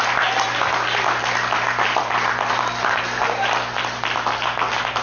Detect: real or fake real